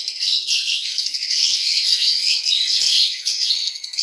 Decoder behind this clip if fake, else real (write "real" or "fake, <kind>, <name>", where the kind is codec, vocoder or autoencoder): fake, codec, SNAC